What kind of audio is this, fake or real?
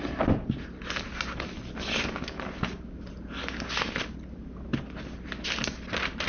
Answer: real